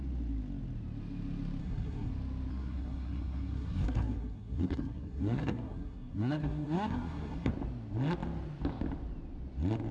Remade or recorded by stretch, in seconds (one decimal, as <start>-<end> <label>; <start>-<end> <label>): 0.0-1.6 recorded; 1.6-2.1 remade; 2.1-2.5 recorded; 2.5-7.5 remade; 7.5-9.9 recorded